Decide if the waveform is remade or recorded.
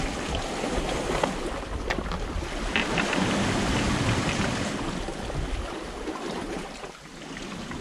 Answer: recorded